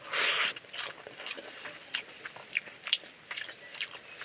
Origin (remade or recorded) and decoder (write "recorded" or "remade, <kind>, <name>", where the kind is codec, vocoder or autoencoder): remade, vocoder, BigVGAN v2